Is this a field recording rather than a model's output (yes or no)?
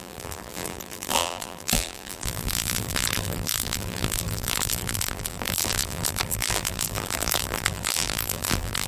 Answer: no